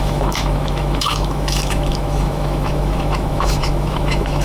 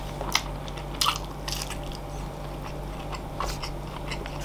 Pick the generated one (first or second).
first